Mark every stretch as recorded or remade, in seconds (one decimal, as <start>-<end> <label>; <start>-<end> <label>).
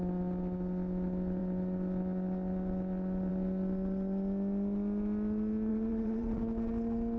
0.0-5.7 recorded; 5.7-6.4 remade; 6.4-7.2 recorded